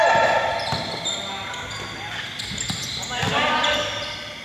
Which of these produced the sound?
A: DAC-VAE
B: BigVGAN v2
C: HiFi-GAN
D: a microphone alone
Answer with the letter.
D